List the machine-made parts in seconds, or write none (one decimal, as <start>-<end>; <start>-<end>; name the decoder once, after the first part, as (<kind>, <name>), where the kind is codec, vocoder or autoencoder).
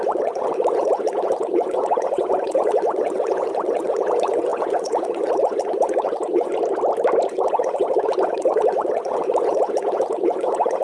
0.0-6.5 (vocoder, WaveNeXt); 7.3-10.8